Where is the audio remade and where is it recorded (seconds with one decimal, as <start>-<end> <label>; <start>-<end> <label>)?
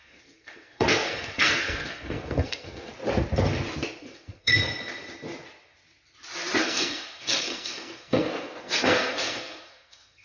0.0-2.9 remade; 2.9-4.0 recorded; 4.0-4.5 remade; 4.5-6.6 recorded; 6.6-10.2 remade